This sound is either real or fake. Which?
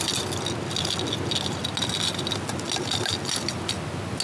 real